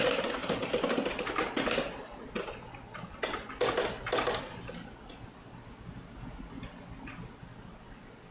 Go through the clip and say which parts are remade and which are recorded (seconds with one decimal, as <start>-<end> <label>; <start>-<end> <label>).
0.0-8.3 recorded